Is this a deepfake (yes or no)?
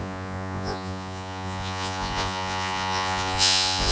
yes